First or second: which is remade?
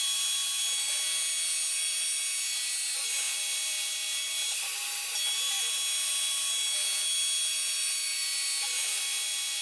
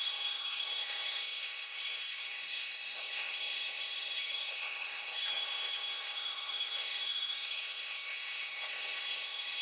second